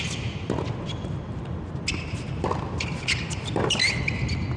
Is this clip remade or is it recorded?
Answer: recorded